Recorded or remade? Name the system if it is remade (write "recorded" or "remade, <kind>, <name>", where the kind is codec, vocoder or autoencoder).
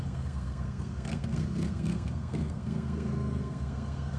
remade, codec, SNAC